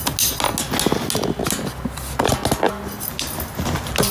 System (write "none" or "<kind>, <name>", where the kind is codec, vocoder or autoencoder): none